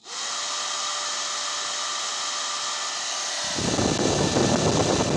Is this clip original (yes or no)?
yes